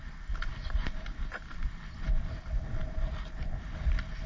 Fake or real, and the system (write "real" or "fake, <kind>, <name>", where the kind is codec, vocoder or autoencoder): real